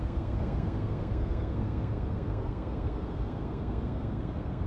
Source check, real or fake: fake